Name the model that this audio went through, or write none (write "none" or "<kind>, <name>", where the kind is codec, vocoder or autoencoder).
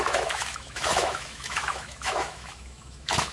autoencoder, DAC-VAE